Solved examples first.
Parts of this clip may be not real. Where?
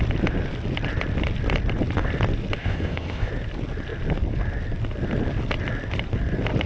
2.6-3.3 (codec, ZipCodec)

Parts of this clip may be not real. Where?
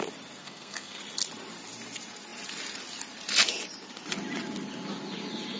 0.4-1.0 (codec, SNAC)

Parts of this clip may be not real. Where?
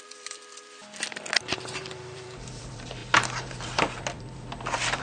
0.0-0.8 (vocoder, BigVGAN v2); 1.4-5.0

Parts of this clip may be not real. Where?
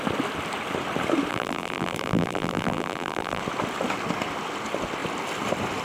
1.3-3.4 (vocoder, BigVGAN v2)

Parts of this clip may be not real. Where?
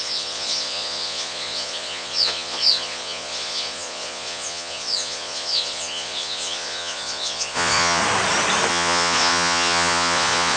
0.0-8.0 (vocoder, Vocos); 8.7-10.6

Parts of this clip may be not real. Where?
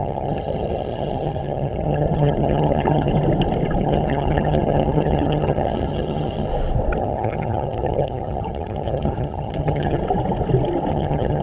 0.0-3.1 (vocoder, HiFi-GAN); 3.8-6.5; 7.0-10.0; 10.9-11.4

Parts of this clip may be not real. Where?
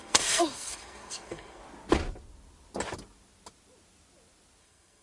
0.0-1.6 (codec, SNAC); 4.6-5.0